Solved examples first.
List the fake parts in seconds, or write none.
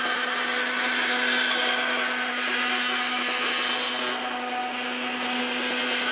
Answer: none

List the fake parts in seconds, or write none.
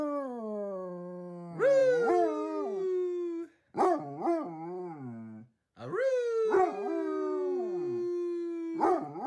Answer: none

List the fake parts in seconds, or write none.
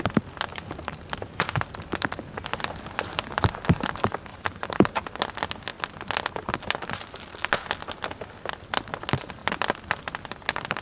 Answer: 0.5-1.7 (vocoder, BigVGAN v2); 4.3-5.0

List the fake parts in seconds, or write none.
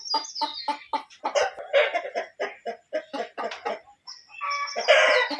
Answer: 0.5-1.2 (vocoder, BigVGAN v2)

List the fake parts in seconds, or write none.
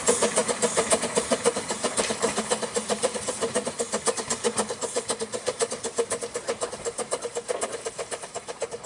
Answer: 0.0-8.9 (vocoder, BigVGAN v2)